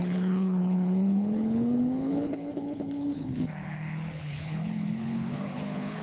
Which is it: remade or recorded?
remade